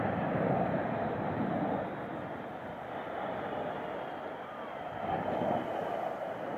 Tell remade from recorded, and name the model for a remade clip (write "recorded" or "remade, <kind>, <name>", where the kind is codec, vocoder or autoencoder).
remade, vocoder, BigVGAN v2